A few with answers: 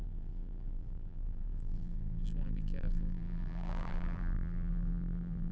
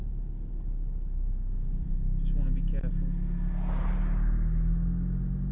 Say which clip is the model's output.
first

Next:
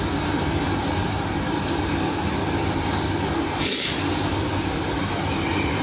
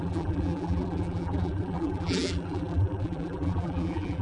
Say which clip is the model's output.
second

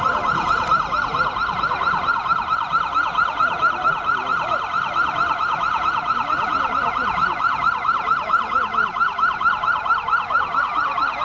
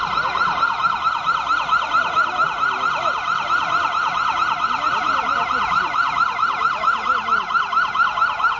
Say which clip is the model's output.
first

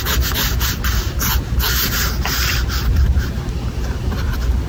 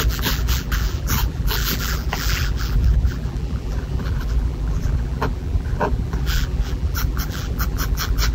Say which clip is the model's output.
second